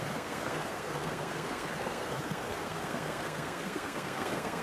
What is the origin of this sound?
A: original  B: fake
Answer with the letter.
B